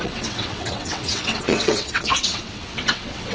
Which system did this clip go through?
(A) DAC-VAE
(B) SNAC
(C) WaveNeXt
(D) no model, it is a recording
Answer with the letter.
C